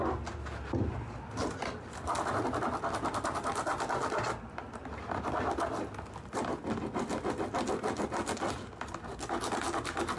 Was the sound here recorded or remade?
recorded